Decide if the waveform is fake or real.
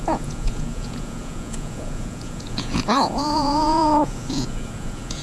fake